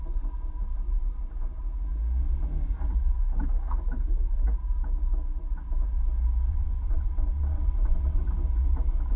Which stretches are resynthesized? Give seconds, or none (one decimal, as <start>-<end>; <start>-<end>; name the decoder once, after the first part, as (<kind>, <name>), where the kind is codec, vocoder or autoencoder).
6.5-8.3 (vocoder, WaveNeXt)